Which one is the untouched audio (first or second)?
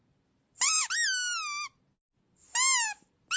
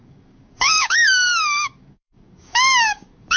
first